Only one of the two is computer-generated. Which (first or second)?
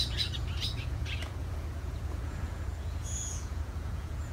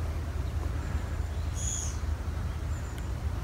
first